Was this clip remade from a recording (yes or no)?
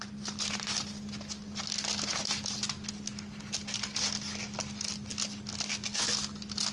no